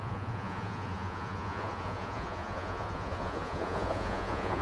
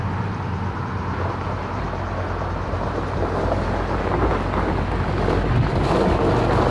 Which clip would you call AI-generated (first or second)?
first